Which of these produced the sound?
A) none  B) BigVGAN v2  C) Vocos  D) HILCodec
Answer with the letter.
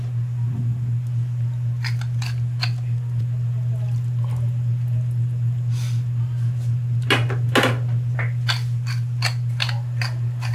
A